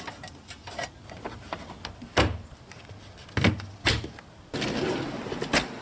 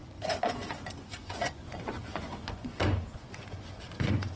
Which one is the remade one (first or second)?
second